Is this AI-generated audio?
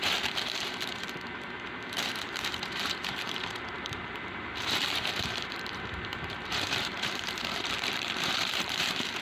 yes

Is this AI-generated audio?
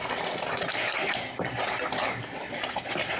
no